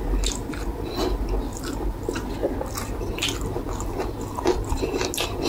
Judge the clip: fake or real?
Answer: real